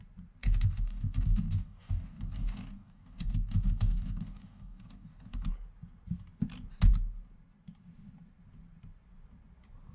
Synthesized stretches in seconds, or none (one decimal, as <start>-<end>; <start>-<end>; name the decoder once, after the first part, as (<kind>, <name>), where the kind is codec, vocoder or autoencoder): 0.4-5.5 (codec, DAC)